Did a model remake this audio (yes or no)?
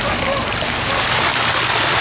no